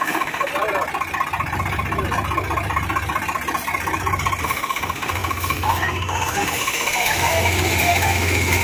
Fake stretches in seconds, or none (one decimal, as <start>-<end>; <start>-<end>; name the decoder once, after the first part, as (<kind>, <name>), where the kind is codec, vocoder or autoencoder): 0.0-0.5 (autoencoder, DAC-VAE); 4.4-8.6